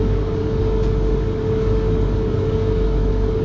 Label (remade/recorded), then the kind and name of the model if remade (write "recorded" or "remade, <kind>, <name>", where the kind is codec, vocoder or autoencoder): remade, codec, DAC